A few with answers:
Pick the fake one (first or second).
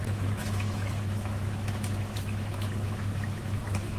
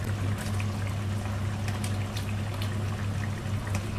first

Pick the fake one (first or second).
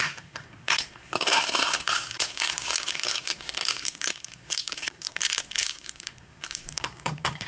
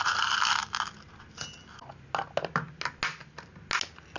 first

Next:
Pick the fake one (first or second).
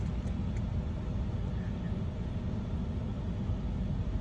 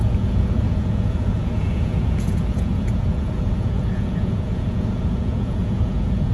second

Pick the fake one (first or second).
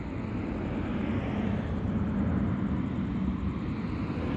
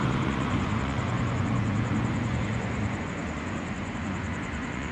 second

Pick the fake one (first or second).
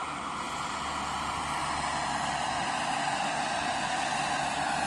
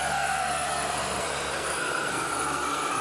second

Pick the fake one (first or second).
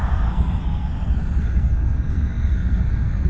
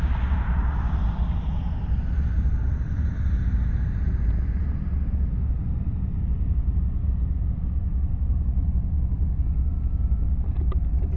first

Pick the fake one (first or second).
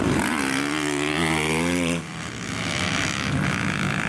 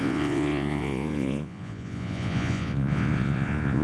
second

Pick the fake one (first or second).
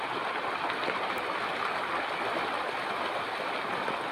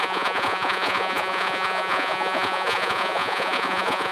second